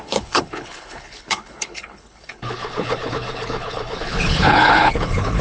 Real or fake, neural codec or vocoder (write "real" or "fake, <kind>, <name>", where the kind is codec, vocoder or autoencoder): fake, codec, HILCodec